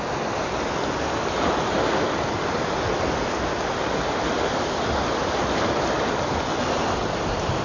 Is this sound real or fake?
real